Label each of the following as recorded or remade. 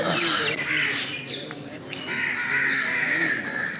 recorded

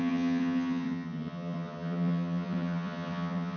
remade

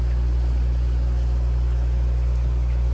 recorded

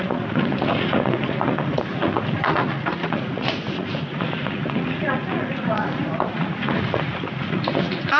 remade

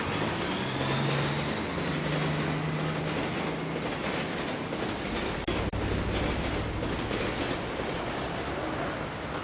recorded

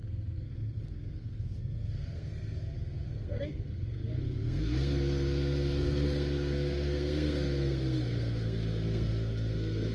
remade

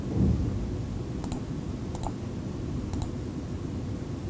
recorded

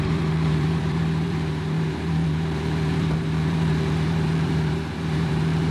remade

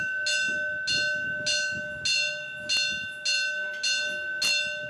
recorded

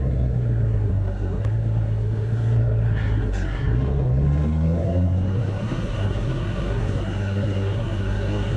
remade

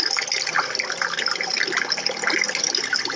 remade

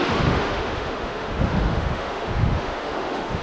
remade